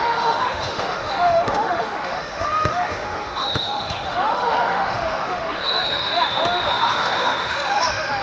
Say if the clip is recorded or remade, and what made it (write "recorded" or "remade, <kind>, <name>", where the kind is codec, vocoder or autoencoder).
remade, autoencoder, DAC-VAE